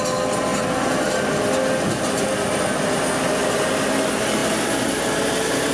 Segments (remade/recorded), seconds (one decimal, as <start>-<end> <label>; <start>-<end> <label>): 0.0-5.7 recorded